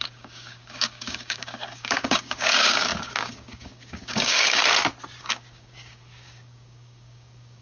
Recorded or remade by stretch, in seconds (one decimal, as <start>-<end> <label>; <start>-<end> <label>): 0.0-4.6 remade; 4.6-5.2 recorded; 5.2-7.6 remade